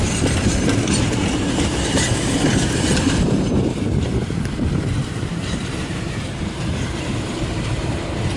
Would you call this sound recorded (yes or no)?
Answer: no